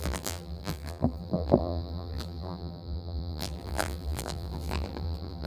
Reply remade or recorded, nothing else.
remade